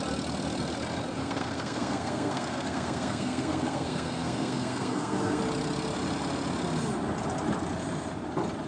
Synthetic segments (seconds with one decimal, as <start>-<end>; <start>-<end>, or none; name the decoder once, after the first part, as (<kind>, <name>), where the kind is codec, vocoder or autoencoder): 1.2-5.4 (codec, SNAC)